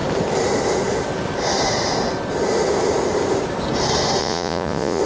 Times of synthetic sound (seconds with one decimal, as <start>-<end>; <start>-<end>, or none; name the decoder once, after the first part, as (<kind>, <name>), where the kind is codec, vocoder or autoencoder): 4.2-5.0 (vocoder, Vocos)